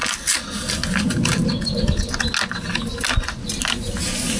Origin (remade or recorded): recorded